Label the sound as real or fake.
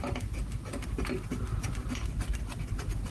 real